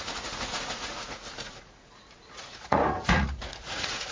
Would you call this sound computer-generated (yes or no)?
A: yes